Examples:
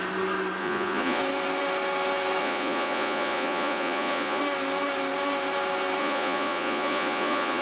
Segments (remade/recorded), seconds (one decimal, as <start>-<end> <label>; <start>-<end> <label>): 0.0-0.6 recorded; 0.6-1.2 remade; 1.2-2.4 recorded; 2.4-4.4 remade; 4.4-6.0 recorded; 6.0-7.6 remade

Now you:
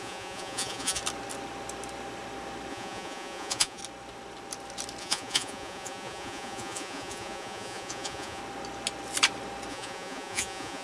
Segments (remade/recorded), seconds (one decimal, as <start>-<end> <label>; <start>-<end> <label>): 0.0-1.0 remade; 1.0-2.7 recorded; 2.7-3.8 remade; 3.8-5.0 recorded; 5.0-8.4 remade; 8.4-9.7 recorded; 9.7-10.8 remade

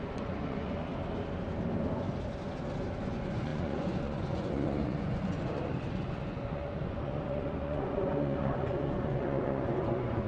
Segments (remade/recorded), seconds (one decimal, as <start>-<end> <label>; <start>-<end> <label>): 0.0-0.9 remade; 0.9-3.0 recorded; 3.0-10.3 remade